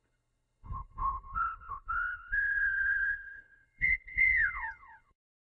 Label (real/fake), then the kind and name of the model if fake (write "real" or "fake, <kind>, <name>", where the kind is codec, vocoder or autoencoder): fake, codec, HILCodec